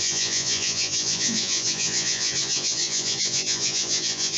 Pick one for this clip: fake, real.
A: fake